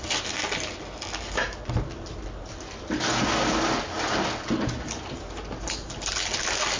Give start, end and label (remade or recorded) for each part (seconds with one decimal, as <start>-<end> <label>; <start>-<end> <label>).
0.0-6.8 recorded